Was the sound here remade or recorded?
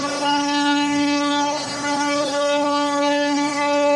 remade